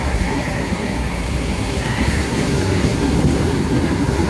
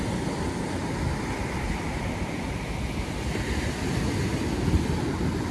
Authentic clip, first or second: second